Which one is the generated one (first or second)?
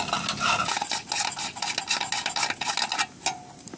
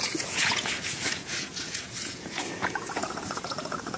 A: second